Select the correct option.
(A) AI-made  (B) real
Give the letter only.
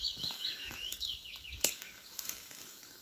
A